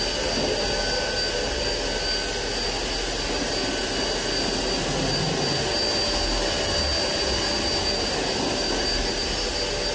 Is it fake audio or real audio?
real